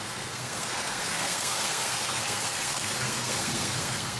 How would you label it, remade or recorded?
remade